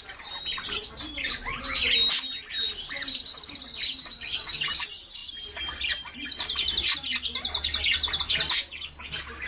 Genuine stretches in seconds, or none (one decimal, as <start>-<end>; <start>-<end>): 0.0-9.5